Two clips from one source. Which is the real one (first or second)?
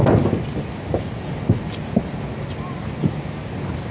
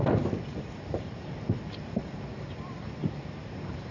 first